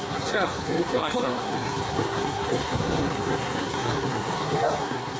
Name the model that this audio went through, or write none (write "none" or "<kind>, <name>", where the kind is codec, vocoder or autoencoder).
codec, SNAC